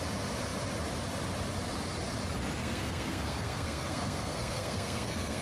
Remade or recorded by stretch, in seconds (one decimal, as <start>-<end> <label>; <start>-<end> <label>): 0.0-2.6 recorded; 2.6-5.4 remade